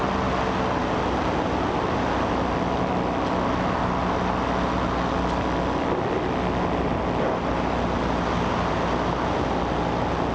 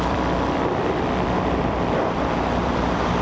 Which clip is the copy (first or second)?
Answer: second